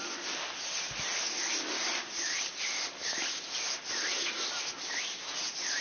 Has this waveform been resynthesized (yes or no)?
no